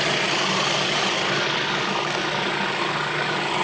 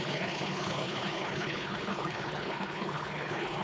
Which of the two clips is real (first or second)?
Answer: first